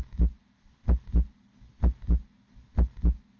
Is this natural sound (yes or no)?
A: yes